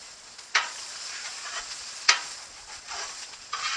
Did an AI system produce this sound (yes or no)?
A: yes